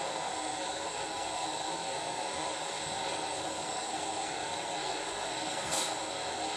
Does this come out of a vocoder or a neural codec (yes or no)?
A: yes